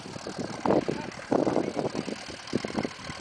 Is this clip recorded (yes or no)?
yes